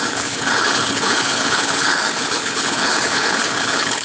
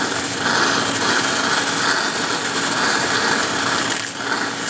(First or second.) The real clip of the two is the second